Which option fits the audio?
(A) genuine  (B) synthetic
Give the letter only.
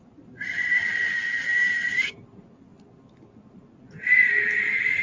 A